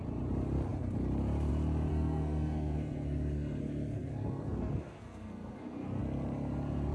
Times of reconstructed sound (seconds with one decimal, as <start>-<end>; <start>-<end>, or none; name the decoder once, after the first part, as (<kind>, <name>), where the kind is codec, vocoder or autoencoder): 1.9-6.0 (codec, SNAC)